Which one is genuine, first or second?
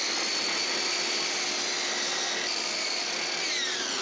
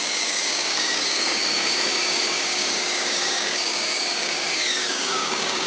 first